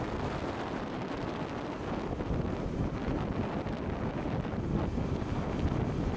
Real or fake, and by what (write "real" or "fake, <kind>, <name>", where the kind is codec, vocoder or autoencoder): real